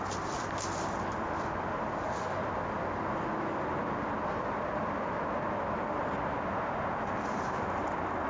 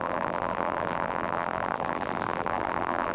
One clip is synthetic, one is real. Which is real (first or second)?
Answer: first